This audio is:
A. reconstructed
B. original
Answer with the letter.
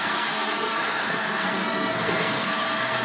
A